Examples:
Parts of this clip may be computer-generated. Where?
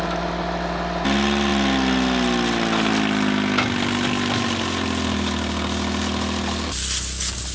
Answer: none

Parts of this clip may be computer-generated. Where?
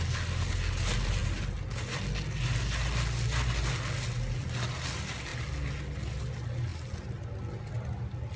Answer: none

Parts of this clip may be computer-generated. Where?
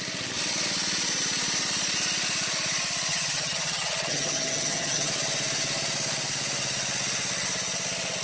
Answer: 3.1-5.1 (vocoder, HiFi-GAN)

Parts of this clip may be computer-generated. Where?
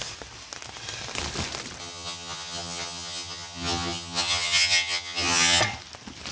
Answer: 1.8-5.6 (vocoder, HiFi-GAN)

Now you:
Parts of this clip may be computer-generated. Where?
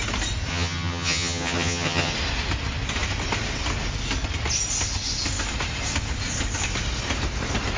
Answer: 0.5-2.1 (vocoder, HiFi-GAN)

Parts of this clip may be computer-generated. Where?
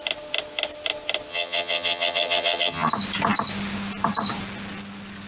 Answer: 1.3-2.9 (vocoder, HiFi-GAN)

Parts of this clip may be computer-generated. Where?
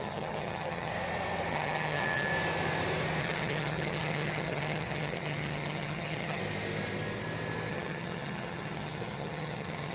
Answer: 0.0-0.9 (vocoder, HiFi-GAN); 1.5-2.3; 3.2-6.4; 7.7-9.9